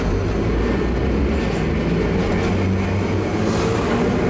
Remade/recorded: recorded